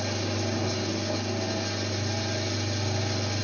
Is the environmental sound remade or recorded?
recorded